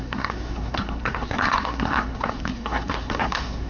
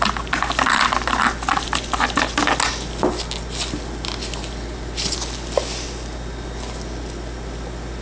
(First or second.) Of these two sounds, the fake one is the first